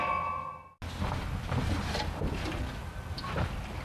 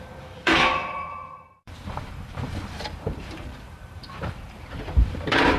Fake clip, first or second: second